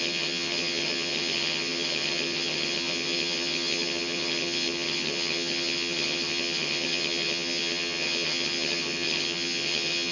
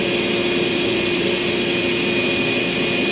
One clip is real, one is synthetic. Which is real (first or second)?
second